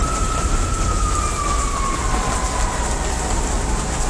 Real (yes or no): yes